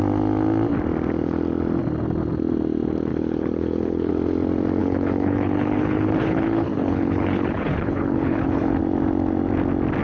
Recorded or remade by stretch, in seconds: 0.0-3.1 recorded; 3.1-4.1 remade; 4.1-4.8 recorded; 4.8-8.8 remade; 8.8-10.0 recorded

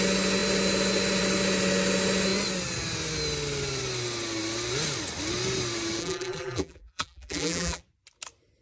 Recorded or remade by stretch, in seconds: 0.0-6.0 recorded; 6.0-7.8 remade; 7.8-8.6 recorded

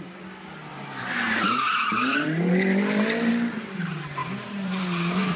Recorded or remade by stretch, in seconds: 0.0-0.7 recorded; 0.7-3.3 remade; 3.3-4.2 recorded; 4.2-4.8 remade; 4.8-5.4 recorded

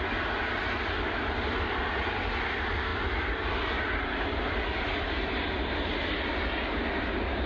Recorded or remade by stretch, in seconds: 0.0-7.5 recorded